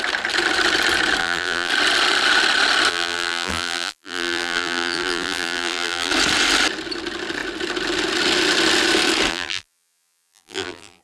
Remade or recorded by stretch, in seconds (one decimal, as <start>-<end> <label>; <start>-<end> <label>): 0.0-1.2 recorded; 1.2-1.7 remade; 1.7-2.9 recorded; 2.9-6.1 remade; 6.1-9.3 recorded; 9.3-11.0 remade